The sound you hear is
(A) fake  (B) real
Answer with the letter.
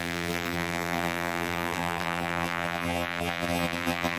A